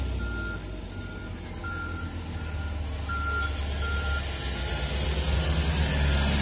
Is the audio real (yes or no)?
yes